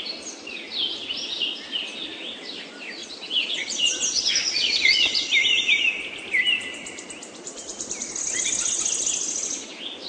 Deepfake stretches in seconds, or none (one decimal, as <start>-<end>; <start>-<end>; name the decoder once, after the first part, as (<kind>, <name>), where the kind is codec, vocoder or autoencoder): 3.0-5.2 (vocoder, Vocos)